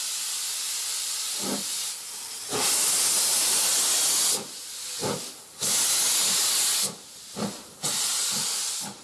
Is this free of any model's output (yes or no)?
yes